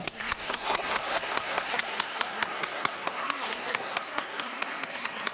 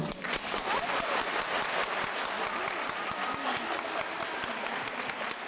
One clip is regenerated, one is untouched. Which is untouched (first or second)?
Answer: second